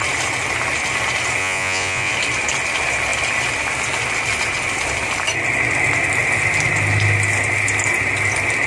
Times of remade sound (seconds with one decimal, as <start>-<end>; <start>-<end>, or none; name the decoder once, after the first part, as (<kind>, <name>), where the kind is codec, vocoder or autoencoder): 1.4-2.1 (vocoder, Vocos)